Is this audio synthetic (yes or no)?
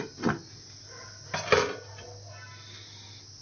no